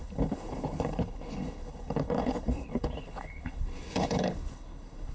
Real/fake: fake